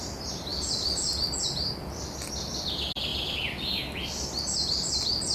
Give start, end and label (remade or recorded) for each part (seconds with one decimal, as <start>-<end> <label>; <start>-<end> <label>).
0.0-5.3 recorded